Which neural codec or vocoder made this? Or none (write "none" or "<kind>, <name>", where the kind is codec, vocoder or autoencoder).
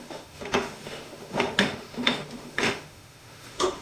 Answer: autoencoder, DAC-VAE